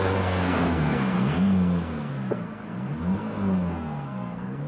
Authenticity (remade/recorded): remade